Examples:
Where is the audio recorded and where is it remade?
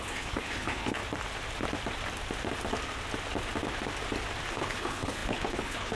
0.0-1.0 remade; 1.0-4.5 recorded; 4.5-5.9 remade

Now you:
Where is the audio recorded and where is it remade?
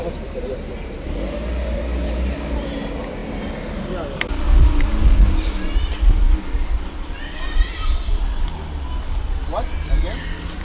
0.0-10.6 recorded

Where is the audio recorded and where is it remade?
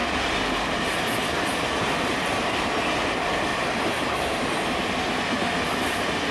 0.0-6.3 recorded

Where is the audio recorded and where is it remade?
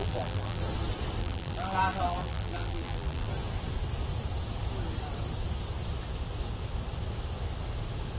0.0-0.6 remade; 0.6-1.2 recorded; 1.2-3.3 remade; 3.3-8.2 recorded